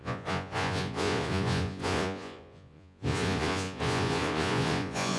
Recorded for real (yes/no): no